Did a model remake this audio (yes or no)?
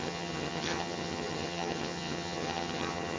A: yes